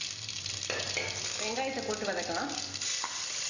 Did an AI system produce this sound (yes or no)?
no